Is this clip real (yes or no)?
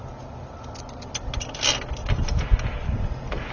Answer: yes